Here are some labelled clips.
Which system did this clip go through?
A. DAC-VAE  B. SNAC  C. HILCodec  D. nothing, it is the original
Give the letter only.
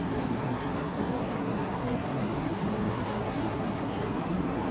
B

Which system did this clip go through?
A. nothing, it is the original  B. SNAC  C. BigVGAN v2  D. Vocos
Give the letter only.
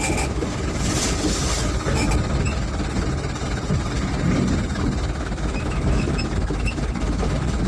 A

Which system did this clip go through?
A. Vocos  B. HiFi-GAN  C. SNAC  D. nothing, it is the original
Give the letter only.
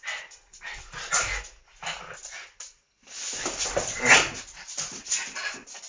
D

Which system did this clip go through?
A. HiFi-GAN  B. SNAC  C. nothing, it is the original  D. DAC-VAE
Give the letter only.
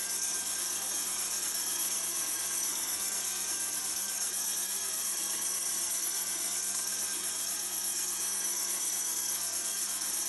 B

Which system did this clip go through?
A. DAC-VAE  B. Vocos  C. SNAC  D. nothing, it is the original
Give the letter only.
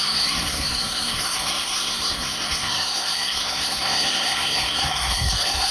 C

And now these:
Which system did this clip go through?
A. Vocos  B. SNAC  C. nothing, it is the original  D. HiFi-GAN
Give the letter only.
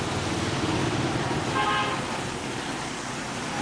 C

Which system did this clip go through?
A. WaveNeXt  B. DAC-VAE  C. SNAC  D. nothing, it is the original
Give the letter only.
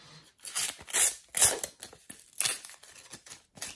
D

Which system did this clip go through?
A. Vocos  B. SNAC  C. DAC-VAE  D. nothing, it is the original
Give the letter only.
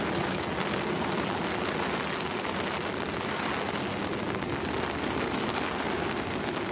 D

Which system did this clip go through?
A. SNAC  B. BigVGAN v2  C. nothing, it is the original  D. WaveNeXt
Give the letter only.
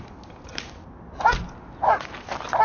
C